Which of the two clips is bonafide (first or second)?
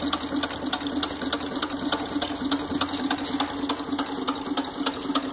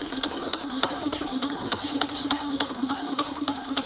first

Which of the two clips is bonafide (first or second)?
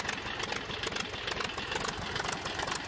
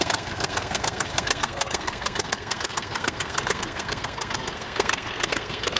first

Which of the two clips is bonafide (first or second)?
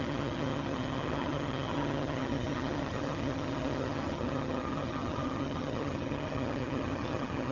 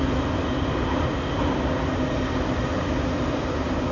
second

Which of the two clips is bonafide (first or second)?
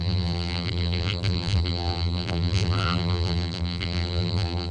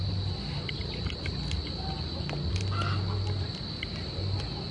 second